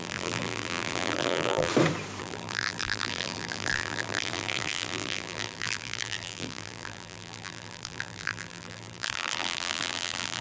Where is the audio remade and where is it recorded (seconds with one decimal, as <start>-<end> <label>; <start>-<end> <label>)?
0.0-1.7 remade; 1.7-2.2 recorded; 2.2-10.4 remade